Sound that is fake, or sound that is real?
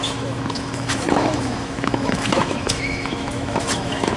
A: fake